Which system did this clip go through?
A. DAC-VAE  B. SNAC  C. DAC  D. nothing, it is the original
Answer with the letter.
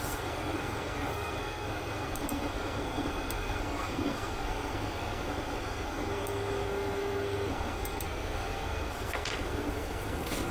B